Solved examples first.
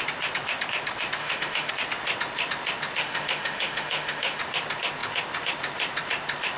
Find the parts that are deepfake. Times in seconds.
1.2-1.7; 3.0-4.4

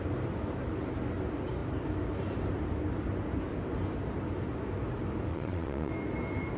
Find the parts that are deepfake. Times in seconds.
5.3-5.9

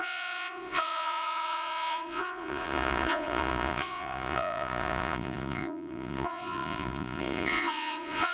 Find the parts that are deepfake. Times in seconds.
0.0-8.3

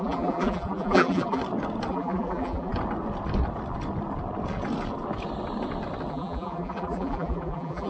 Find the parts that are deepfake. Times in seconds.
0.0-1.4; 1.9-2.7; 6.1-7.9

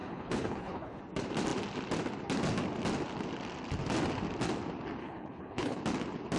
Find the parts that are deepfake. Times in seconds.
0.0-1.0; 5.0-5.8

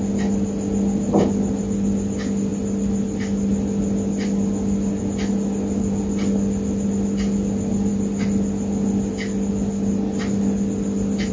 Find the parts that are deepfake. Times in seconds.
none